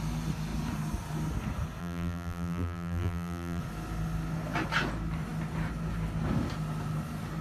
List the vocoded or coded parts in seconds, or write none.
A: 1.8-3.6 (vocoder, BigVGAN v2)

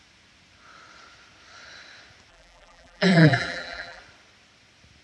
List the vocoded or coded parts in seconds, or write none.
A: 2.3-4.0 (vocoder, BigVGAN v2)